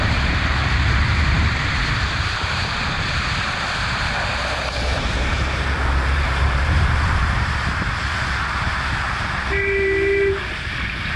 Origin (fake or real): fake